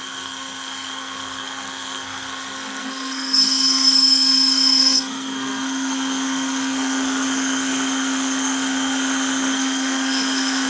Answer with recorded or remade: remade